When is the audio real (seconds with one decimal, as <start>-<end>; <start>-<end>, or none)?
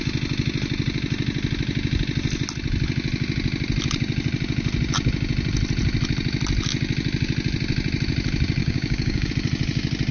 0.0-8.6; 9.3-10.1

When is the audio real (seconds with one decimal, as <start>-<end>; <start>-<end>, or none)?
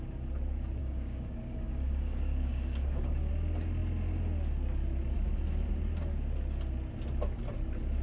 0.0-0.8; 3.3-8.0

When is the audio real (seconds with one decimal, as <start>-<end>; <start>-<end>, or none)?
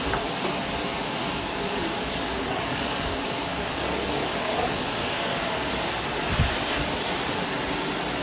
0.0-1.2; 5.7-8.2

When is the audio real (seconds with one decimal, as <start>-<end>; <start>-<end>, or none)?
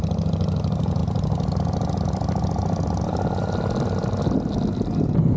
0.0-5.4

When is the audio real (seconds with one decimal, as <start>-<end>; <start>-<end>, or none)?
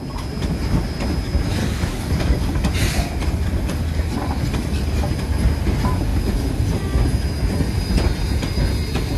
0.0-1.6; 2.6-9.2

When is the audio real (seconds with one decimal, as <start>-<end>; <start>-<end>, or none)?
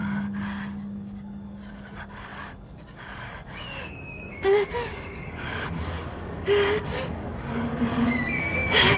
none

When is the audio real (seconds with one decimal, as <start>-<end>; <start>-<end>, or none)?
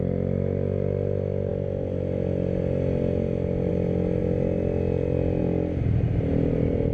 0.0-6.9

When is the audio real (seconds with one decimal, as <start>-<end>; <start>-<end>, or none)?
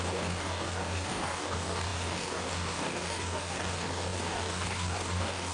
none